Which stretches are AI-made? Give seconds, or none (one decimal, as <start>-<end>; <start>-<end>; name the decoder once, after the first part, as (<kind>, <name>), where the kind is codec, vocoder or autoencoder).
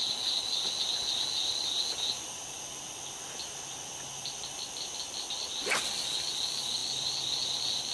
none